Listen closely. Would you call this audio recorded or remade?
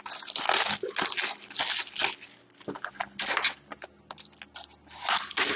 recorded